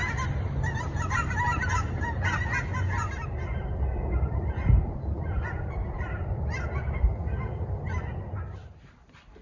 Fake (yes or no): no